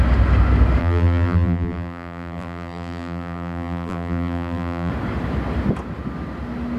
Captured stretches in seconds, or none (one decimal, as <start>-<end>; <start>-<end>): 0.0-0.8; 4.9-6.8